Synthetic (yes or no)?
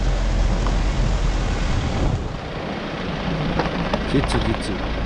no